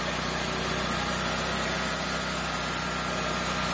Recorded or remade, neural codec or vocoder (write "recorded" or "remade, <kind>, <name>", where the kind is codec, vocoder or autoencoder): recorded